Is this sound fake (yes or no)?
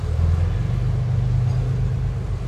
no